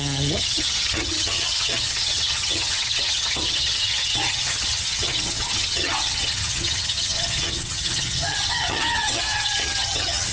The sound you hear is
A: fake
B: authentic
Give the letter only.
A